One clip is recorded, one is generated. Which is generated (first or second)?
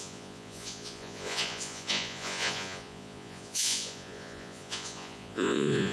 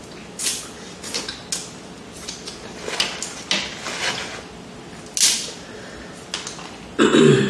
first